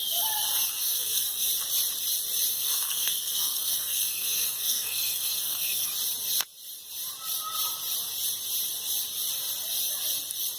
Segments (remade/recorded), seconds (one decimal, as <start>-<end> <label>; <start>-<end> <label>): 0.0-0.8 recorded; 0.8-1.5 remade; 1.5-2.5 recorded; 2.5-5.9 remade; 5.9-10.6 recorded